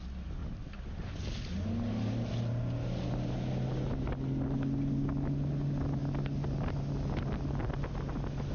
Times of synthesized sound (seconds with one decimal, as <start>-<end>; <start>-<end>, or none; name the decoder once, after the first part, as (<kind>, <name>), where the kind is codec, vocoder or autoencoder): none